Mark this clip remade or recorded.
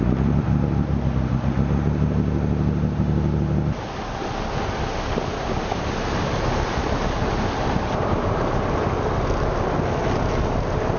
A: recorded